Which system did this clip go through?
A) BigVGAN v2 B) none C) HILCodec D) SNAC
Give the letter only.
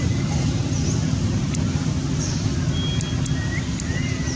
B